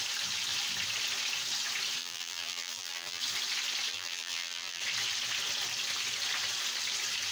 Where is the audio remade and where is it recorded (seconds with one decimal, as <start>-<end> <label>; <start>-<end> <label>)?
0.0-2.0 recorded; 2.0-3.2 remade; 3.2-3.9 recorded; 3.9-4.8 remade; 4.8-7.3 recorded